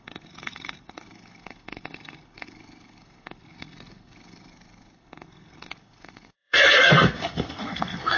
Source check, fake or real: fake